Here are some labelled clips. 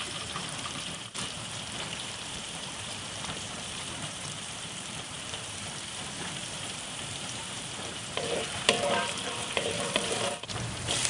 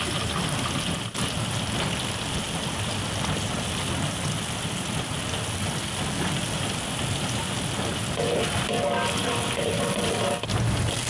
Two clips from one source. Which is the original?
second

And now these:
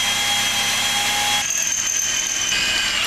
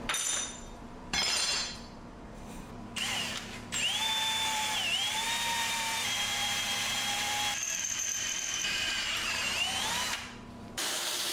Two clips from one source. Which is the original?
first